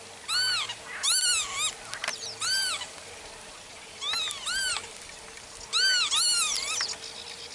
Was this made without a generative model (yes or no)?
yes